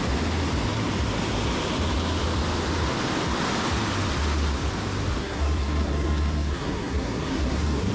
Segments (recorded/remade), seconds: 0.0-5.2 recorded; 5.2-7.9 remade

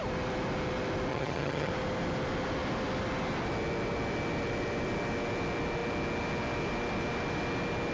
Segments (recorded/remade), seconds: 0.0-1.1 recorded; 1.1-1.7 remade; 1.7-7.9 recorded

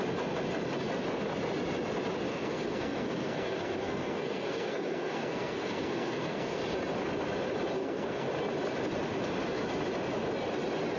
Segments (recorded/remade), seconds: 0.0-2.3 recorded; 2.3-6.6 remade; 6.6-7.8 recorded; 7.8-8.3 remade; 8.3-11.0 recorded